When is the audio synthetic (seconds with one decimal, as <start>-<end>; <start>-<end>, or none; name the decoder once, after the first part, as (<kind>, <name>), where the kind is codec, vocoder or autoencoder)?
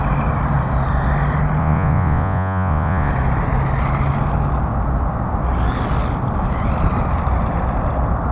1.6-3.1 (vocoder, Vocos)